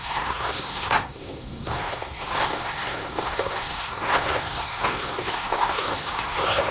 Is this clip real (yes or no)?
no